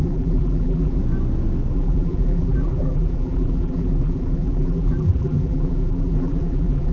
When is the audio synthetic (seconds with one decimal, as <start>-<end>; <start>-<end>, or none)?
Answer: 0.0-1.0; 1.7-6.9